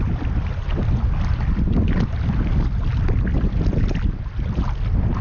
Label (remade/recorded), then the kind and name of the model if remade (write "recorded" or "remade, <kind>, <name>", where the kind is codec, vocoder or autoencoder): recorded